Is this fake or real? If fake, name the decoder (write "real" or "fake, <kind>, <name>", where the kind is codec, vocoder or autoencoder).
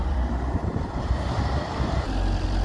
fake, vocoder, BigVGAN v2